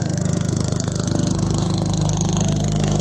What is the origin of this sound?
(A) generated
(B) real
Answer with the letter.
A